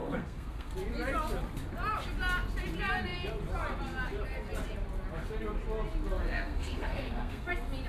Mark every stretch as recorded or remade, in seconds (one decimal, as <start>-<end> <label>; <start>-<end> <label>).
0.0-0.7 remade; 0.7-6.2 recorded; 6.2-7.5 remade; 7.5-7.9 recorded